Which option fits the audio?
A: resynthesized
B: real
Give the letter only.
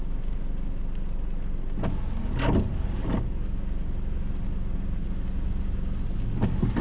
B